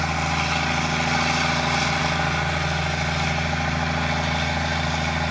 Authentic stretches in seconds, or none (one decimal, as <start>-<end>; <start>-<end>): 0.0-5.3